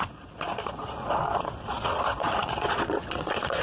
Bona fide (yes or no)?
no